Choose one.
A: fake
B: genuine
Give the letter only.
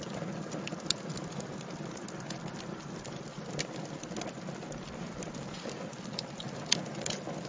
B